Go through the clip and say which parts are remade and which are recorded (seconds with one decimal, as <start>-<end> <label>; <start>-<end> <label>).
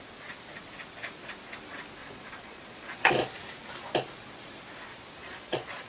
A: 0.0-2.0 recorded; 2.0-3.1 remade; 3.1-4.9 recorded; 4.9-5.9 remade